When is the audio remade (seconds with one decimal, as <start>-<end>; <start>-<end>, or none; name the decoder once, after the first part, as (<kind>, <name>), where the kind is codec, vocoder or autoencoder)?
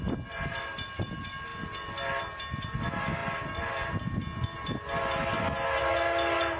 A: none